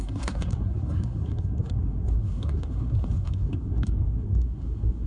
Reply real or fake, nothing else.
fake